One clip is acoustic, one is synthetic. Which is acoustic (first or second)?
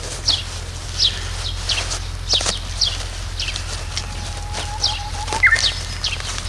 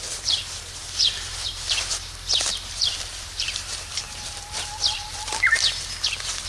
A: first